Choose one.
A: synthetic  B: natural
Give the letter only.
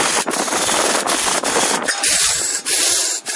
B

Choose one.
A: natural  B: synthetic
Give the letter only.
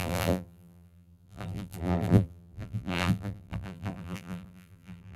B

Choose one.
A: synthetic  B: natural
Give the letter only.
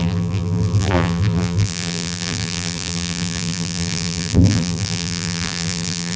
A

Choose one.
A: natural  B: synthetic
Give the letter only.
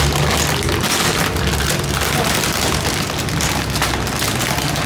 A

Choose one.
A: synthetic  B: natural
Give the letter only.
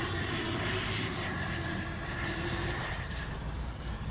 A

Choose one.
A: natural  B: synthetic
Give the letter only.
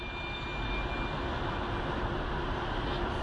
A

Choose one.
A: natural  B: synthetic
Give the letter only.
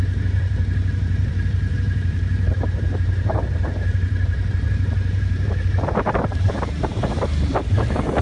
B